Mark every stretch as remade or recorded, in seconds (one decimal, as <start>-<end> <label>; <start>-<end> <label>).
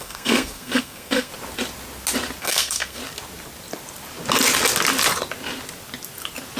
0.0-1.3 remade; 1.3-2.4 recorded; 2.4-3.0 remade; 3.0-6.6 recorded